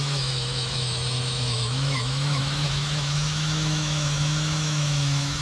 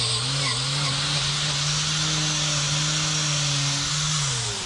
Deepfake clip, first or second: first